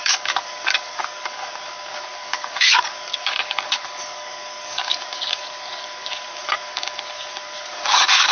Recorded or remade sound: remade